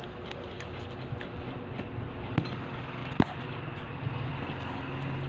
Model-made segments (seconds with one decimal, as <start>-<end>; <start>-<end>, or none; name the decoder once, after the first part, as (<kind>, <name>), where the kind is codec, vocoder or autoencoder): 3.0-4.3 (vocoder, BigVGAN v2)